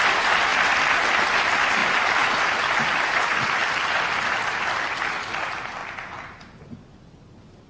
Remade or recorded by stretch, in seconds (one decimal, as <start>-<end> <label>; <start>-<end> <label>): 0.0-0.5 recorded; 0.5-1.2 remade; 1.2-1.8 recorded; 1.8-2.4 remade; 2.4-7.7 recorded